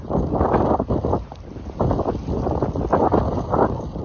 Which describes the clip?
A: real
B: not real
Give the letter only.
A